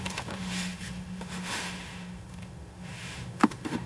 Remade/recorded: remade